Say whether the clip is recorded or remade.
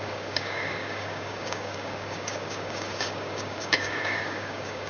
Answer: remade